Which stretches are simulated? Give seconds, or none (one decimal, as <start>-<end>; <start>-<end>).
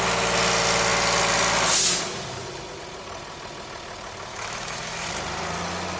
4.3-5.1